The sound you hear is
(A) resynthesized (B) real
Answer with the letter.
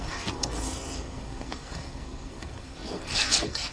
A